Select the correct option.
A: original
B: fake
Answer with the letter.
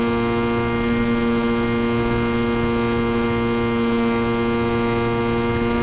A